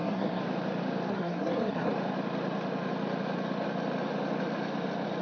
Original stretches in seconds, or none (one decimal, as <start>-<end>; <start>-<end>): 0.4-1.1; 1.9-5.2